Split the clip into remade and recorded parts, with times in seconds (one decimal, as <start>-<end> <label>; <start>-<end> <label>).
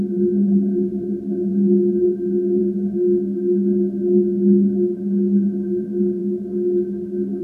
0.0-1.5 recorded; 1.5-2.6 remade; 2.6-7.4 recorded